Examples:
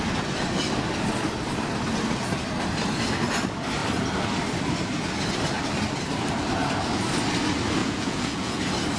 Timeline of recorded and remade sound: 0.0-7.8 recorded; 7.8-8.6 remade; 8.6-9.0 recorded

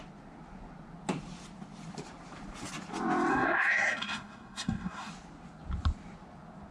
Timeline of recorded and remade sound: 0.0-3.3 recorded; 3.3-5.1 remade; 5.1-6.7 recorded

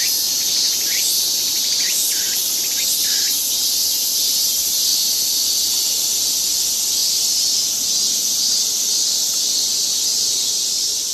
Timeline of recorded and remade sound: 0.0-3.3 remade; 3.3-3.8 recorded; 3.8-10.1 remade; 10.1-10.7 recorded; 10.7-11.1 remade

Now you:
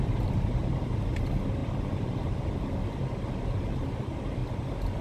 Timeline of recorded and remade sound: 0.0-0.6 recorded; 0.6-1.1 remade; 1.1-5.0 recorded

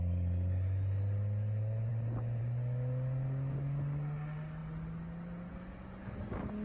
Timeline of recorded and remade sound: 0.0-6.6 recorded

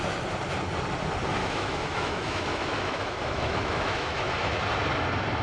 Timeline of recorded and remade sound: 0.0-1.4 recorded; 1.4-4.6 remade; 4.6-5.4 recorded